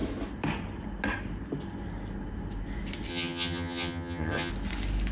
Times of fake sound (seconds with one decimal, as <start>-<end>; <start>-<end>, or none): 3.1-4.5